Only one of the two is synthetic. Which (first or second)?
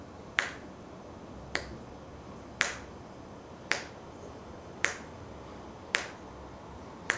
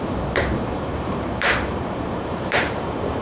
second